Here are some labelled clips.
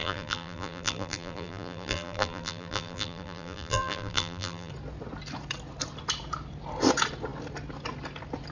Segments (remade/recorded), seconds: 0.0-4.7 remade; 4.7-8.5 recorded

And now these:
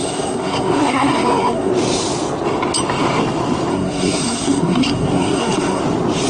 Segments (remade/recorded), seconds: 0.0-1.7 remade; 1.7-3.7 recorded; 3.7-5.8 remade; 5.8-6.3 recorded

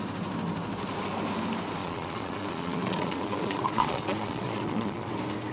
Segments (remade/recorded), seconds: 0.0-1.8 recorded; 1.8-5.1 remade; 5.1-5.5 recorded

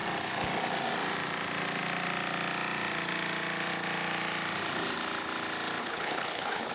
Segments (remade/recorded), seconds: 0.0-5.8 recorded; 5.8-6.7 remade

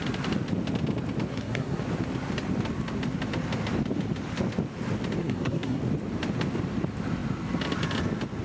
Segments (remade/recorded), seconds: 0.0-1.3 recorded; 1.3-1.8 remade; 1.8-5.2 recorded; 5.2-5.8 remade; 5.8-8.4 recorded

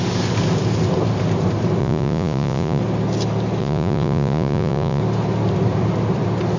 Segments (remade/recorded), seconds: 0.0-1.8 recorded; 1.8-2.8 remade; 2.8-3.6 recorded; 3.6-5.0 remade; 5.0-6.6 recorded